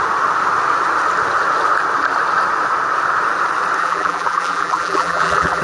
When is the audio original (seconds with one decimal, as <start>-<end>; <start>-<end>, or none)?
0.0-3.8